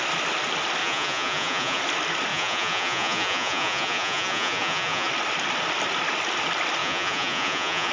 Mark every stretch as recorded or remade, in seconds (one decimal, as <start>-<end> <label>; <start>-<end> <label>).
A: 0.0-0.8 recorded; 0.8-1.8 remade; 1.8-2.3 recorded; 2.3-5.1 remade; 5.1-6.8 recorded; 6.8-7.9 remade